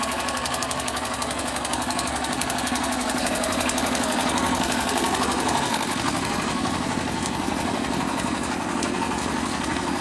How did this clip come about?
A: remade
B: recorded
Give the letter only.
A